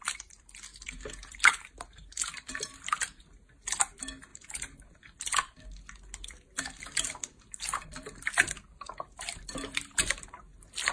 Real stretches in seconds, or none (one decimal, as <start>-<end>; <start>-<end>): 0.0-0.7; 2.2-4.3; 5.0-9.5; 10.4-10.9